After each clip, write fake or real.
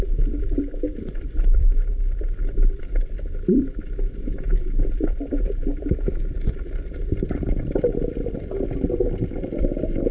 fake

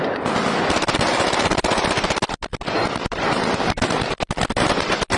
real